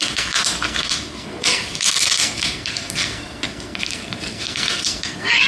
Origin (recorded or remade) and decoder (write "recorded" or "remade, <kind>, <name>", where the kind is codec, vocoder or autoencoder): remade, codec, SNAC